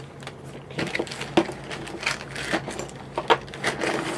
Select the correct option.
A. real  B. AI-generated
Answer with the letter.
A